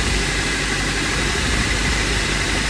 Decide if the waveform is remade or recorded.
remade